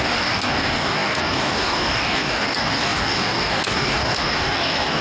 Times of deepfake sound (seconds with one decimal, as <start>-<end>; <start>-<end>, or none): 0.0-5.0